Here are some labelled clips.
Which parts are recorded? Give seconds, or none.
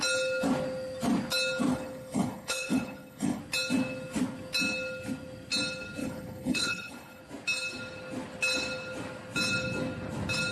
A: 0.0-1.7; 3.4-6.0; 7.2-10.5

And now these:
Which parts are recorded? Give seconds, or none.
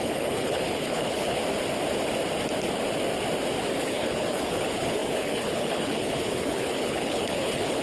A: 1.4-3.8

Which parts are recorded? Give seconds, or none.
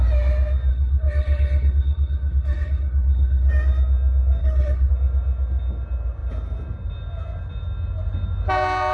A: 0.0-0.7; 3.5-4.4; 4.9-8.9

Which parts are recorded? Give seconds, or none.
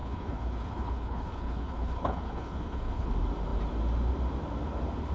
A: 3.1-5.1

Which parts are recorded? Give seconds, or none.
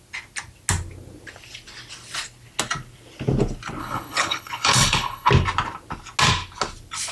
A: 0.0-3.8; 5.3-7.1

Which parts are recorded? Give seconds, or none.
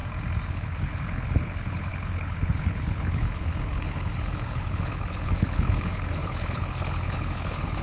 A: 0.0-0.5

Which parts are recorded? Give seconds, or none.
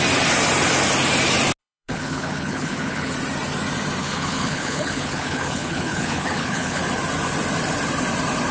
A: 0.0-1.6; 3.1-4.0; 6.8-8.5